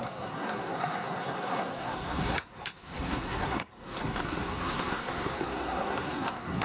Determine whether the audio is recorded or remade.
remade